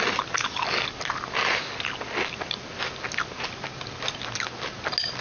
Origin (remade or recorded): recorded